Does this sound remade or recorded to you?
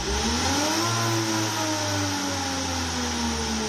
recorded